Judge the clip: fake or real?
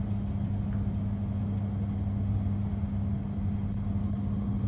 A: real